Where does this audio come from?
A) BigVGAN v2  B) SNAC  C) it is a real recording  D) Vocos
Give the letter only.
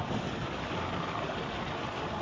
C